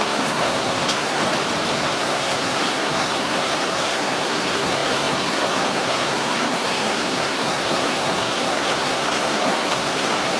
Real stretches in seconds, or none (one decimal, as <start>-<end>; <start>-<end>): 1.2-1.7